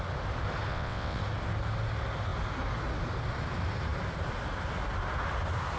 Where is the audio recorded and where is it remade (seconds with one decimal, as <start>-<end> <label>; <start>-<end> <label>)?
0.0-0.7 recorded; 0.7-1.2 remade; 1.2-5.8 recorded